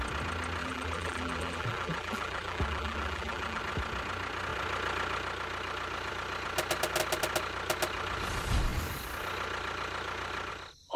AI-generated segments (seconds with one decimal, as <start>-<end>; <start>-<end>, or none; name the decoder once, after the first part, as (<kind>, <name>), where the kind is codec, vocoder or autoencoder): 0.6-3.6 (vocoder, BigVGAN v2)